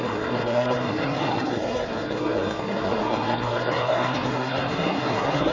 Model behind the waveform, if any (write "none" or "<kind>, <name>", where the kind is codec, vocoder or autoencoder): codec, SNAC